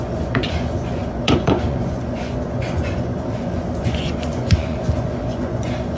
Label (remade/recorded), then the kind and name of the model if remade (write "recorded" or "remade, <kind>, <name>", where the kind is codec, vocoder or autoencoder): remade, vocoder, Vocos